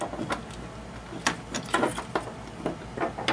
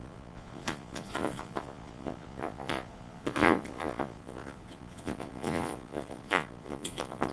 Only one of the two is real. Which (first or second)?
first